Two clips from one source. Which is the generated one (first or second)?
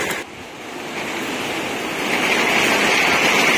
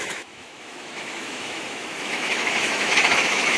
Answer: second